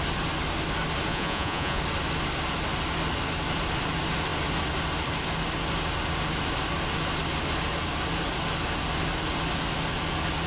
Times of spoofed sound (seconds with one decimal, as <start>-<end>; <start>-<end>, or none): 1.1-1.8